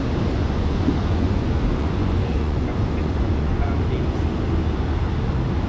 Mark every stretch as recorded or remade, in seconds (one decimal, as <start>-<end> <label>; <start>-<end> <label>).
0.0-0.4 recorded; 0.4-3.8 remade; 3.8-5.7 recorded